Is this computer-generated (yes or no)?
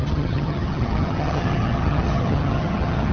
yes